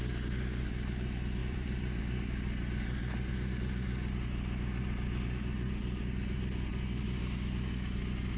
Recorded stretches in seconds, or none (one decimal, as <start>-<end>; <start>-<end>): 0.0-1.4; 2.0-8.4